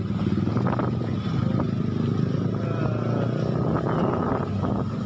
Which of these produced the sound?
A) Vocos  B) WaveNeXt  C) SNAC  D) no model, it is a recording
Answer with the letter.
D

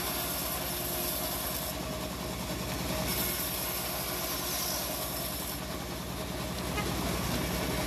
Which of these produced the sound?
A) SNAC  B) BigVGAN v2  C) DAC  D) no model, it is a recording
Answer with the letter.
D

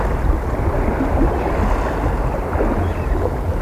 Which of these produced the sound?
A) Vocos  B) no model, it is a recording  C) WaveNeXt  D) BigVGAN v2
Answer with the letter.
B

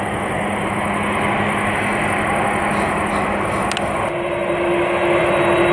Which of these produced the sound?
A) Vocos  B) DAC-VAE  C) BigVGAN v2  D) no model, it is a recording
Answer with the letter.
D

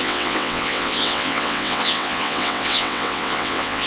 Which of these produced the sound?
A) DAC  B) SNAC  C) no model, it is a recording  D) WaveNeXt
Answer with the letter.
D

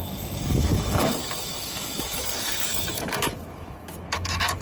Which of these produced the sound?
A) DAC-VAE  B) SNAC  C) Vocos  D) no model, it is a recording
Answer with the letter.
A